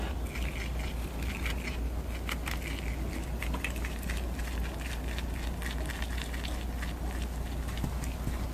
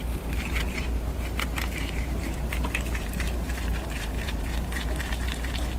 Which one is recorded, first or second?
first